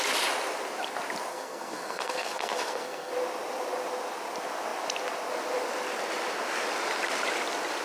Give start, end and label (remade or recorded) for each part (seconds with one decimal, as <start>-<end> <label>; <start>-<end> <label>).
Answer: 0.0-1.3 recorded; 1.3-3.1 remade; 3.1-7.8 recorded